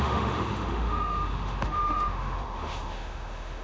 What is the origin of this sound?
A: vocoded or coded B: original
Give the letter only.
A